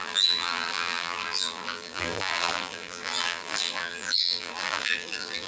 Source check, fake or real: fake